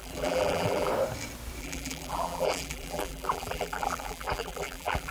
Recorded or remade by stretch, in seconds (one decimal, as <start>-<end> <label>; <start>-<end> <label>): 0.0-0.9 remade; 0.9-1.6 recorded; 1.6-5.1 remade